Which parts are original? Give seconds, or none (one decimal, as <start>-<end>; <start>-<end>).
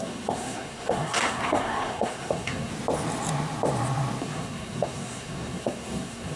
2.7-4.2